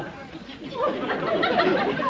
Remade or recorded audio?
recorded